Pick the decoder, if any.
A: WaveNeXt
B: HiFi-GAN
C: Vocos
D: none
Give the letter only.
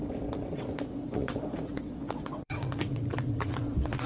A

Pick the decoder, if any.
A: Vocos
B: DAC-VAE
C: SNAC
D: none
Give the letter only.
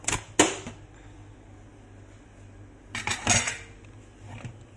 D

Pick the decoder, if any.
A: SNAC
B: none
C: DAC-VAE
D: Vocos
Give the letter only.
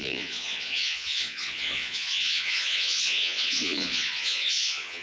D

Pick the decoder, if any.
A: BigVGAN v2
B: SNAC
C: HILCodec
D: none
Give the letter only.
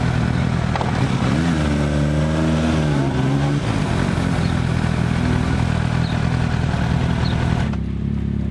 D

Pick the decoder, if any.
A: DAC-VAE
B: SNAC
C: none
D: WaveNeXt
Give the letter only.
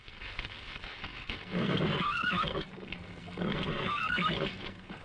B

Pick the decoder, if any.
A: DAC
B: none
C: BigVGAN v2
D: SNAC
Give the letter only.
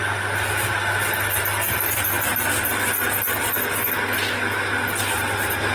B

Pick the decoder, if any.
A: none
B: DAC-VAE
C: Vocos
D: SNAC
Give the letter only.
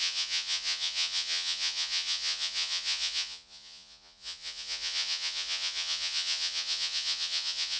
C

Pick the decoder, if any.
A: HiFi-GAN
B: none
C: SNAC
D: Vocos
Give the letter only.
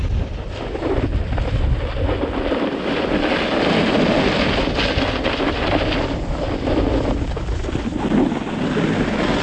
B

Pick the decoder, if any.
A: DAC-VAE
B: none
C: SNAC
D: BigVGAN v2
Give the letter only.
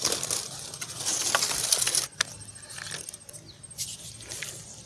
B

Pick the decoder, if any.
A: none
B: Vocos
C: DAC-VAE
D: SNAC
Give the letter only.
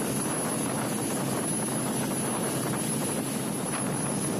A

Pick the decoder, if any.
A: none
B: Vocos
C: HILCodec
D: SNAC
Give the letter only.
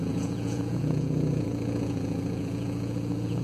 B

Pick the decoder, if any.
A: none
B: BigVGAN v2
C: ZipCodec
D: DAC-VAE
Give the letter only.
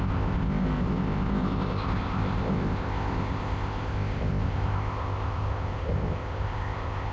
C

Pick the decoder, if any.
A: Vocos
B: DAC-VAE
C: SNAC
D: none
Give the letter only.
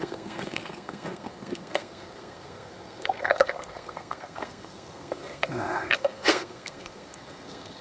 C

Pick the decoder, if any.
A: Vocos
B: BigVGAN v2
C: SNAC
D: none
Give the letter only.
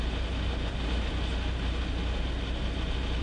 D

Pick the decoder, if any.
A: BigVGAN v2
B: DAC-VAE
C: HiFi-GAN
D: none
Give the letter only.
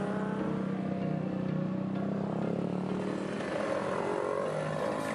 D